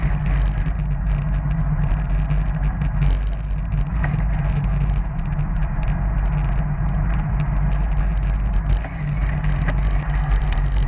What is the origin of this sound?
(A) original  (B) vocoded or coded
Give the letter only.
A